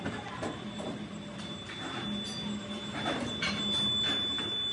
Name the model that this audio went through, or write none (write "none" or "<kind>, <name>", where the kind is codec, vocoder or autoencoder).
none